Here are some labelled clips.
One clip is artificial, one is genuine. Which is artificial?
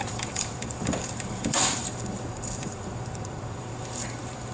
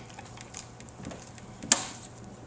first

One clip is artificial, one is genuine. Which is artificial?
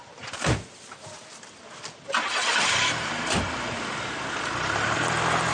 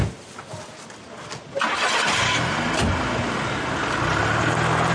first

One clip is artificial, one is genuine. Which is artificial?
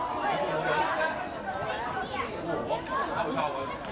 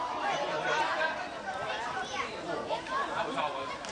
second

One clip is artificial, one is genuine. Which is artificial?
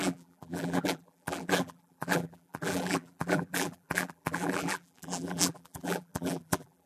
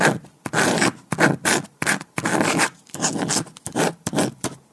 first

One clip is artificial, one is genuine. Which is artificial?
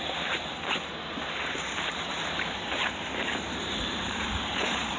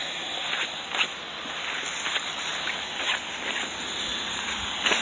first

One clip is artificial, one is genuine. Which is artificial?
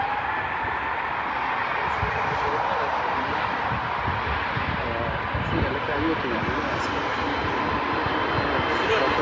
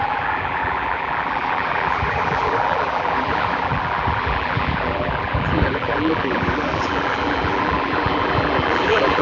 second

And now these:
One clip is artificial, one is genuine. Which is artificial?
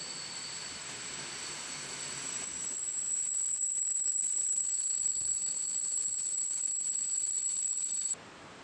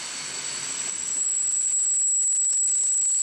first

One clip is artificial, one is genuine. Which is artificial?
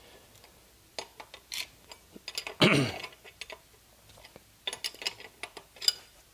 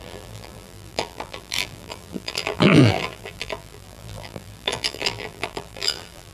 second